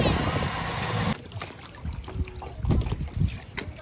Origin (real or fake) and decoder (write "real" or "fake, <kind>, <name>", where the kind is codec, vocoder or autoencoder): real